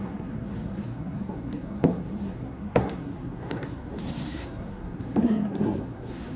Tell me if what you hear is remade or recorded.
remade